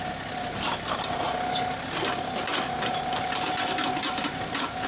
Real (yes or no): yes